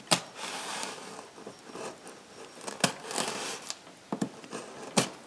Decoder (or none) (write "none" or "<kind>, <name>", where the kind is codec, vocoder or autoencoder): none